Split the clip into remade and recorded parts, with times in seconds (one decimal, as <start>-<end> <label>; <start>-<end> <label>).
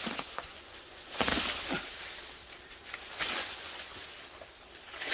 0.0-1.3 remade; 1.3-3.2 recorded; 3.2-4.0 remade; 4.0-5.1 recorded